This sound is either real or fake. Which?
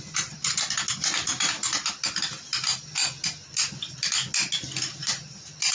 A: real